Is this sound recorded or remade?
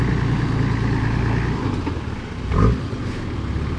recorded